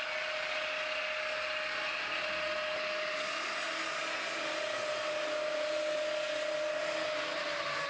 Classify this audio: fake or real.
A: real